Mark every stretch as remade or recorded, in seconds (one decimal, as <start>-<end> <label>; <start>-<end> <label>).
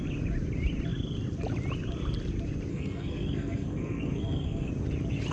0.0-2.7 recorded; 2.7-4.7 remade; 4.7-5.3 recorded